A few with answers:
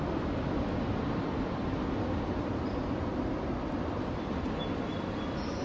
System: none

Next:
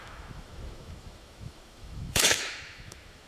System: autoencoder, DAC-VAE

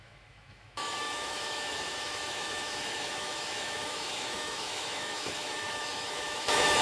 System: autoencoder, DAC-VAE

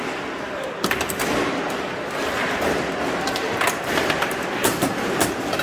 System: none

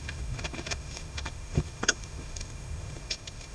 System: autoencoder, DAC-VAE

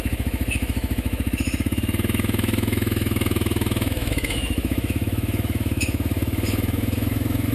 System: autoencoder, DAC-VAE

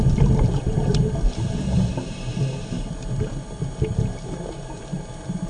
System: none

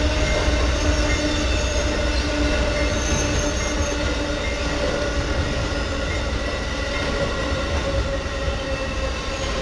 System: none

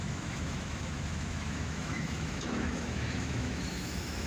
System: autoencoder, DAC-VAE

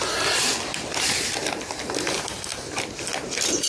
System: none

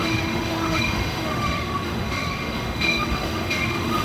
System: autoencoder, DAC-VAE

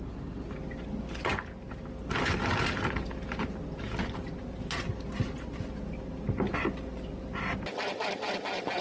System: none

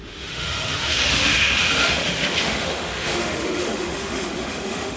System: autoencoder, DAC-VAE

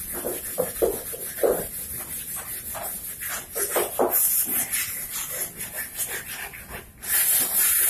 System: none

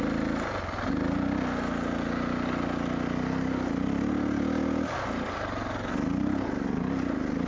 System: none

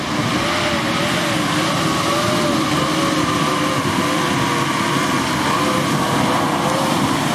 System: none